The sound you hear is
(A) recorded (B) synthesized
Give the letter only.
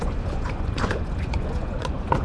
B